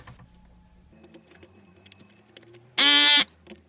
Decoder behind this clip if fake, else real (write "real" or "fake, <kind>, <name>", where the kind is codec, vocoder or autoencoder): real